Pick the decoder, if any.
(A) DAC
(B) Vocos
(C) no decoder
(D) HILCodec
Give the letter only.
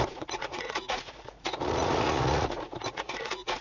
B